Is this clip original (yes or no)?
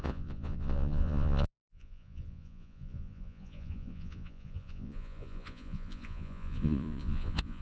no